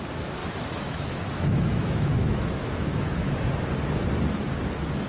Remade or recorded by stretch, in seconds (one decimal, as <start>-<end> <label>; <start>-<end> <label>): 0.0-0.4 recorded; 0.4-3.5 remade; 3.5-5.1 recorded